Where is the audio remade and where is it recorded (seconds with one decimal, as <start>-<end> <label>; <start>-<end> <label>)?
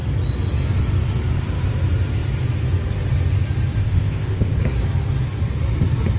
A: 0.0-3.8 recorded; 3.8-4.6 remade; 4.6-6.2 recorded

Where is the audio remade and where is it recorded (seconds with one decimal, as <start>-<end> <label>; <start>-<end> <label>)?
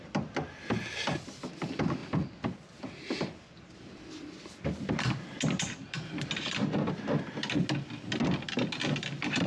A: 0.0-9.5 recorded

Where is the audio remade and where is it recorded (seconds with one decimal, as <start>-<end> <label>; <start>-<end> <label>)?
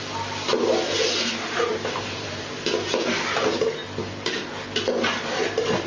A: 0.0-1.7 recorded; 1.7-2.5 remade; 2.5-5.9 recorded